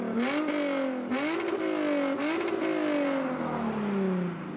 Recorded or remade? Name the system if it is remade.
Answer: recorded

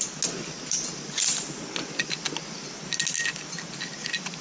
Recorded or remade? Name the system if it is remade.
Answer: recorded